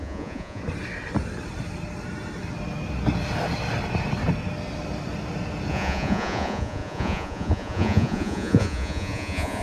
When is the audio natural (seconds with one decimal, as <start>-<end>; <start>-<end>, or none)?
0.6-5.7